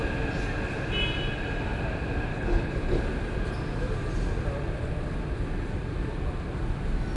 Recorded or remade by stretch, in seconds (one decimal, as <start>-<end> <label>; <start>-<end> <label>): 0.0-2.3 recorded; 2.3-3.0 remade; 3.0-7.2 recorded